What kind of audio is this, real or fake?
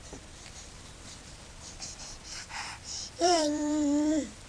fake